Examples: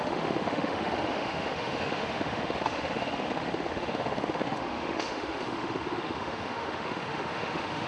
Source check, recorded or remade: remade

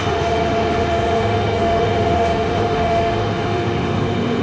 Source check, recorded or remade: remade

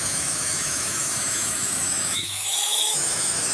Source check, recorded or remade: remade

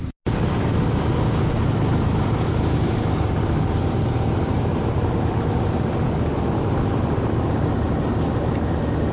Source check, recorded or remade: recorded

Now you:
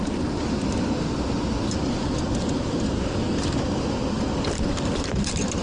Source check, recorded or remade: recorded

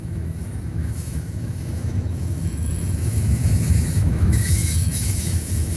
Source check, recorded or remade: remade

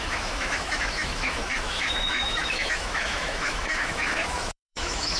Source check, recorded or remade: remade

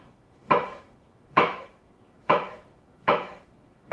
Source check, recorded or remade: remade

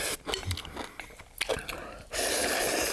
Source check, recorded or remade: recorded